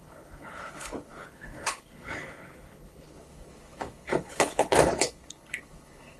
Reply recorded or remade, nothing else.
remade